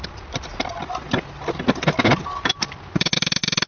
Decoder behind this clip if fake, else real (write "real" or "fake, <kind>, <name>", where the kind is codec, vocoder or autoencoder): real